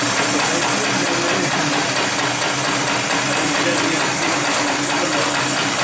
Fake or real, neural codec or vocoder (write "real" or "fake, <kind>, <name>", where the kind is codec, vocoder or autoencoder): real